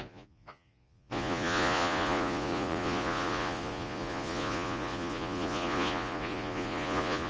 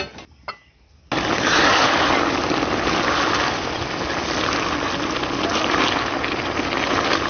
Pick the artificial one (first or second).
first